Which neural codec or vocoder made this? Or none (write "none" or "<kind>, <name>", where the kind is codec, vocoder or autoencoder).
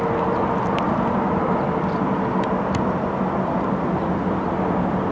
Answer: none